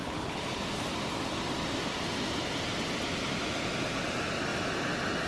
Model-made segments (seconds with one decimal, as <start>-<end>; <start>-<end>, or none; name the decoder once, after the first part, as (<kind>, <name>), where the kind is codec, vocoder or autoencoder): 0.0-0.6 (codec, HILCodec)